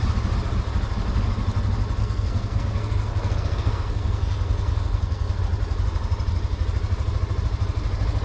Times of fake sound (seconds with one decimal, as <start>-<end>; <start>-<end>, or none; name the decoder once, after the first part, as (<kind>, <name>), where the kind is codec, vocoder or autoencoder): 2.0-5.4 (codec, SNAC)

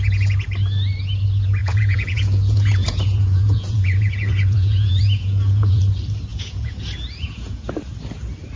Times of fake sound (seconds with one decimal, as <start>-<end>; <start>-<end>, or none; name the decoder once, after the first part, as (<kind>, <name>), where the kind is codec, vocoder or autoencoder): 1.6-5.8 (vocoder, Vocos); 6.3-7.7